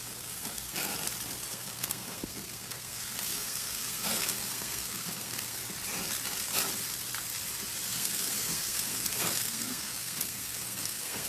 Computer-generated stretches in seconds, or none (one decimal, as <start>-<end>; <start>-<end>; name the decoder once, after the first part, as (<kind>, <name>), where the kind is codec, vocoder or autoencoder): 0.0-0.9 (codec, SNAC); 1.5-5.6; 7.9-11.3